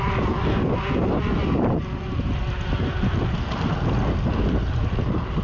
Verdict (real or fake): real